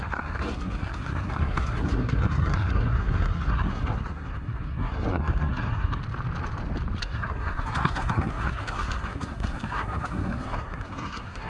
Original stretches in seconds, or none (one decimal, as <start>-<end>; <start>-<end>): 6.0-7.0